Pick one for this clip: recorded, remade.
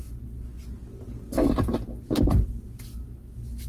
recorded